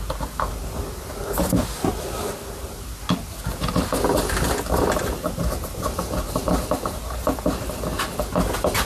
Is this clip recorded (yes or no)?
yes